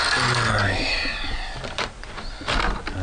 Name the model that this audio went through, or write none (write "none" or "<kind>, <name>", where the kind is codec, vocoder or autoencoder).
none